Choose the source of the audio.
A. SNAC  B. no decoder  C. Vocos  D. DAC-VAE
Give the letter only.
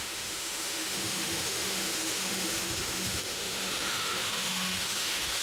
D